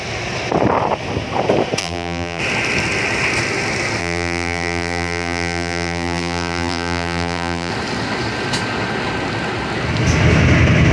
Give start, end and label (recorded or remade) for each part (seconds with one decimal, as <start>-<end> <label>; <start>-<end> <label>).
0.0-1.8 recorded; 1.8-2.4 remade; 2.4-4.0 recorded; 4.0-7.7 remade; 7.7-10.9 recorded